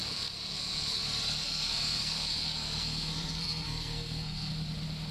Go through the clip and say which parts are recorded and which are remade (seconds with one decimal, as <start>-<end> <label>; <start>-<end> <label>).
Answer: 0.0-1.0 remade; 1.0-1.4 recorded; 1.4-4.5 remade; 4.5-5.1 recorded